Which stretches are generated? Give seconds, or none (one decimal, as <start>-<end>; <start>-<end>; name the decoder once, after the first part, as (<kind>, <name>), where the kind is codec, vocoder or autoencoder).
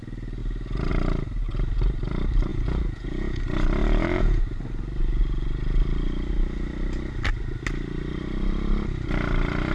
2.5-3.4 (vocoder, Vocos); 3.8-4.4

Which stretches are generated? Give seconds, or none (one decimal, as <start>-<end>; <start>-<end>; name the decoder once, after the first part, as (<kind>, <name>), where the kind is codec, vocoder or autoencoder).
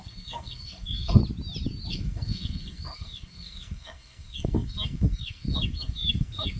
0.0-1.2 (codec, SNAC); 1.9-6.6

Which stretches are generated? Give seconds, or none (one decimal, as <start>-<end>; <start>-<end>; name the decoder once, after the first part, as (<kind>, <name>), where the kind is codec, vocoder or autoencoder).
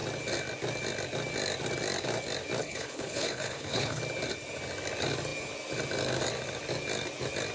2.6-4.0 (codec, HILCodec)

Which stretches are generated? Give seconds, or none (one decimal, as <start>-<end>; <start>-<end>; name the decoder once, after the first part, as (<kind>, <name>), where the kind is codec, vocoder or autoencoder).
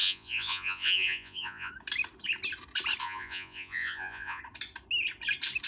0.0-1.7 (vocoder, Vocos); 3.0-4.4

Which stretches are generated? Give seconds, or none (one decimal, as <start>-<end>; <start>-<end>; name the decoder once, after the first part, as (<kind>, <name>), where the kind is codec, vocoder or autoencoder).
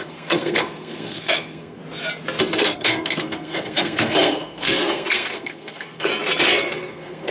0.0-1.8 (codec, SNAC); 2.4-6.1; 6.7-7.3